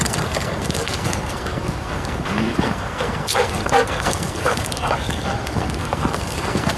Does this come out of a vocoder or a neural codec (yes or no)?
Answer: yes